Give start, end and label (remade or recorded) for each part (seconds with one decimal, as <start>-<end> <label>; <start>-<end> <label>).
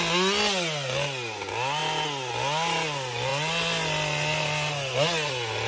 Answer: 0.0-5.7 recorded